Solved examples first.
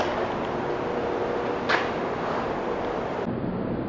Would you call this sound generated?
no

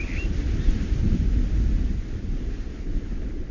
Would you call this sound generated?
no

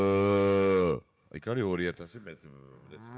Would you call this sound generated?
yes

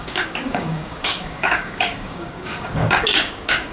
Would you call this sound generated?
yes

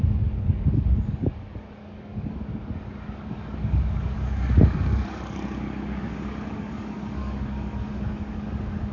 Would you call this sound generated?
yes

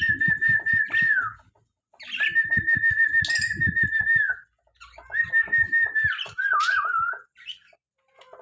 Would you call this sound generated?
no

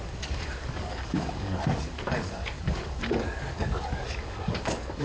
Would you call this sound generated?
yes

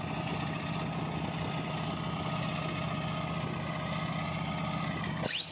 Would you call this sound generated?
no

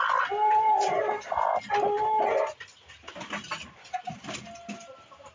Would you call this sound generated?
no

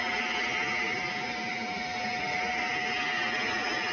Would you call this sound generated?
no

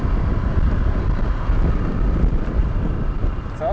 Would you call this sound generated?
no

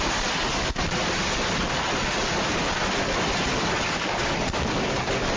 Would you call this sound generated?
no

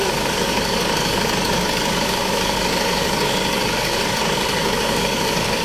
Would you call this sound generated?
yes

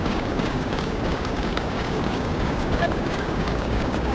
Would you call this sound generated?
yes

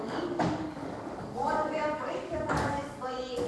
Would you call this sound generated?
yes